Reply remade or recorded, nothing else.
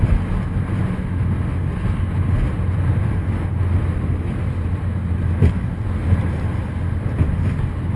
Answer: recorded